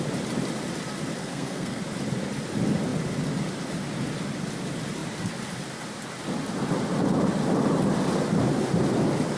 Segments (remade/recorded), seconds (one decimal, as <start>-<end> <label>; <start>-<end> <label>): 0.0-1.2 recorded; 1.2-1.8 remade; 1.8-9.4 recorded